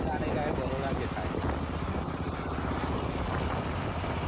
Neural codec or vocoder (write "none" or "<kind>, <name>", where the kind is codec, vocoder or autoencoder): none